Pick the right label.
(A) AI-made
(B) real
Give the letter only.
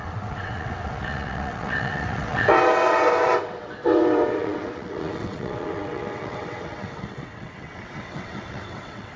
A